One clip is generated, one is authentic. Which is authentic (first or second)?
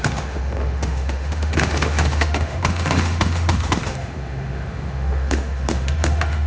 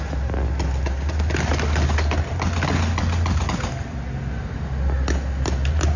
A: second